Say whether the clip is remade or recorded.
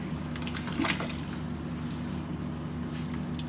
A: recorded